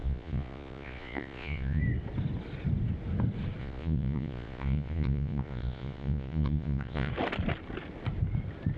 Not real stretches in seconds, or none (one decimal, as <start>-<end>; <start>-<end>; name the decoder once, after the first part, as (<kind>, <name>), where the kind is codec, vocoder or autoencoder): 0.0-1.8 (vocoder, Vocos); 3.6-7.1